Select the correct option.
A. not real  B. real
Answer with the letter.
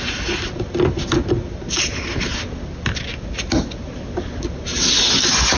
B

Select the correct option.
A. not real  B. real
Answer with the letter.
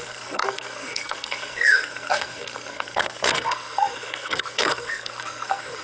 A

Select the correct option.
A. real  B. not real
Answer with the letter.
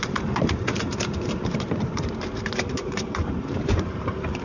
B